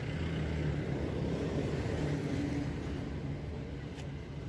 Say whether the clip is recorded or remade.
recorded